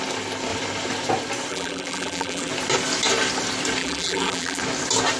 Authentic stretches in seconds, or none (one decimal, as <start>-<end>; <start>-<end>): 0.0-1.5; 2.5-3.8; 4.6-5.2